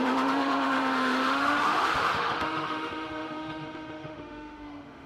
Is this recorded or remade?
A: remade